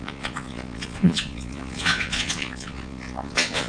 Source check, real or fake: fake